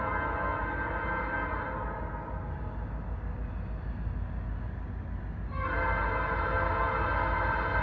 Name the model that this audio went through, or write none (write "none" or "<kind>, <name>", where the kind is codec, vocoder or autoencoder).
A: none